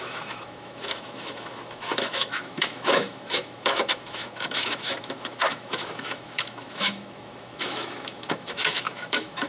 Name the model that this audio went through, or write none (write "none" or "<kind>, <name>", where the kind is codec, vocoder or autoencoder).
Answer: autoencoder, DAC-VAE